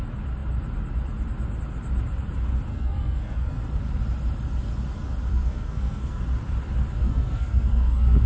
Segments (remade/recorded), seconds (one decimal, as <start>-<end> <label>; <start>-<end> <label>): 0.0-2.7 recorded; 2.7-3.6 remade; 3.6-5.3 recorded; 5.3-6.2 remade; 6.2-7.0 recorded; 7.0-8.3 remade